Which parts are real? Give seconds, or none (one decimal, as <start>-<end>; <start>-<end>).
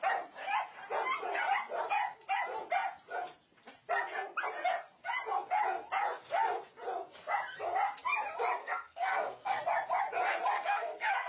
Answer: 0.0-8.6; 9.6-10.5